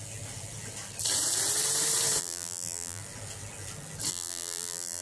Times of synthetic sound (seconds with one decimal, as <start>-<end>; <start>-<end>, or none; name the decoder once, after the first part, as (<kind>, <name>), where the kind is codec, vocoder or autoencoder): 2.2-3.0 (vocoder, BigVGAN v2); 4.1-5.0